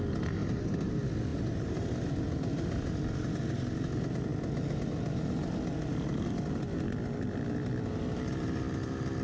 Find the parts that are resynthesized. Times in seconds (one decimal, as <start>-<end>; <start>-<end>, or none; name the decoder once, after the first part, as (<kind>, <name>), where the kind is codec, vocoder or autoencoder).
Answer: 0.4-0.9 (vocoder, BigVGAN v2); 1.3-2.1